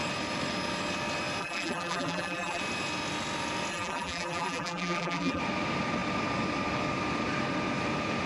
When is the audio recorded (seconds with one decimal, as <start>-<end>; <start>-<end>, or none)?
0.0-1.4; 2.6-3.7; 5.4-8.3